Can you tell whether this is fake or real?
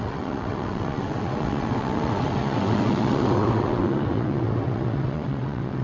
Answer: fake